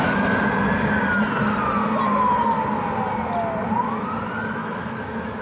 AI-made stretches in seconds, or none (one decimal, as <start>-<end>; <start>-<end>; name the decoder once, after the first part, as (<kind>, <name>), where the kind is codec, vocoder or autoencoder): 4.6-5.4 (autoencoder, DAC-VAE)